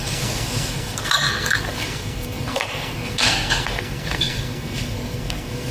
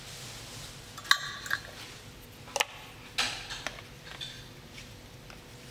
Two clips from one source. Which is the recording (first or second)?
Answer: second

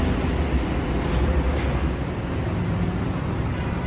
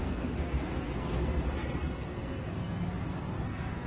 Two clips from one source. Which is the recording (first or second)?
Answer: first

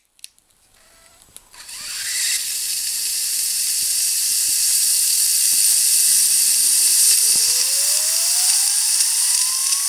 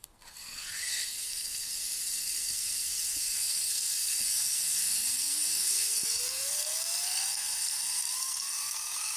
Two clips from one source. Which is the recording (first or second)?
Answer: first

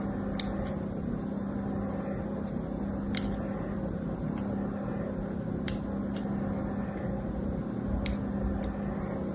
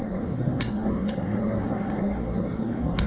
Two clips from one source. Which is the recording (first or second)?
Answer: first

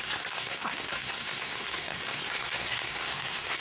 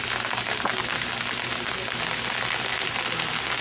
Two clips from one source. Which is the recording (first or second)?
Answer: second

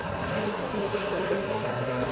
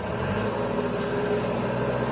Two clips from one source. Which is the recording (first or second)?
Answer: second